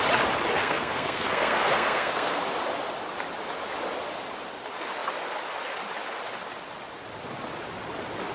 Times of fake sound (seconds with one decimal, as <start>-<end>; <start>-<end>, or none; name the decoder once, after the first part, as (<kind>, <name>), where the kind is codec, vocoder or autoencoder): 0.6-2.4 (codec, SNAC)